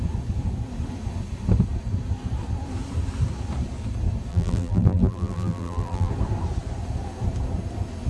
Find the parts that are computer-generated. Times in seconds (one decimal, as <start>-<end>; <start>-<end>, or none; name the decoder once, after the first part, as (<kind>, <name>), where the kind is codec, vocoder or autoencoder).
4.3-6.1 (vocoder, BigVGAN v2)